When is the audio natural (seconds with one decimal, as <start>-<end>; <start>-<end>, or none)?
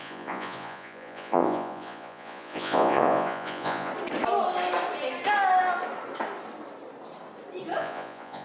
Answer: 3.9-7.8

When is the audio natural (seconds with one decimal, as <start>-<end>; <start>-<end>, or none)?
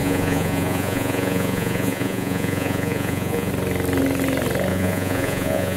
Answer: 3.5-4.7